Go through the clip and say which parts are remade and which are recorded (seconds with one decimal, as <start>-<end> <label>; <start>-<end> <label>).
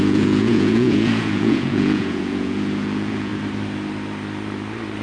0.0-3.3 remade; 3.3-5.0 recorded